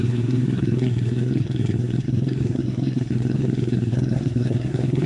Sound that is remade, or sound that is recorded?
remade